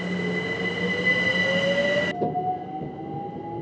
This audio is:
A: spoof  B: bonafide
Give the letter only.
B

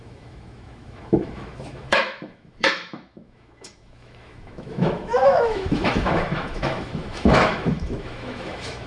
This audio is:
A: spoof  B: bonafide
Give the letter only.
A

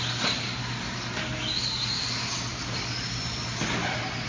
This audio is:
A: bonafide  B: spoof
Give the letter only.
A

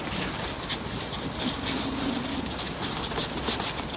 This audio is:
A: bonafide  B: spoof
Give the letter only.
A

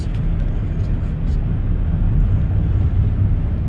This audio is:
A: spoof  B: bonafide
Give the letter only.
B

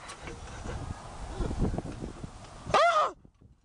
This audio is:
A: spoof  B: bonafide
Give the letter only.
B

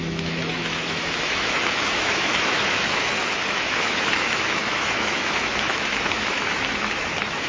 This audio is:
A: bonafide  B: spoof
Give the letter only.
B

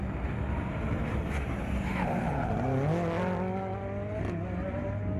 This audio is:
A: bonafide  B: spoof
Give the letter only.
A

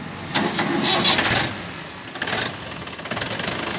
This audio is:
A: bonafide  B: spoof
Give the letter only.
A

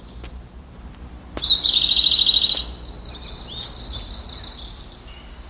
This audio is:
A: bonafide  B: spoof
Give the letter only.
A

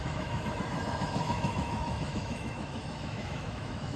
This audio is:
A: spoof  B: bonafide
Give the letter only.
A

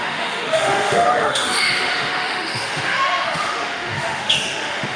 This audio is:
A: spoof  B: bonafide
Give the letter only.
A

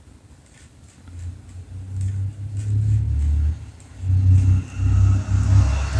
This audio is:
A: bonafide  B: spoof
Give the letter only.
A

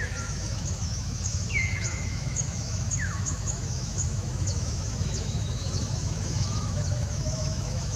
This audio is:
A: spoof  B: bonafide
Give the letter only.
A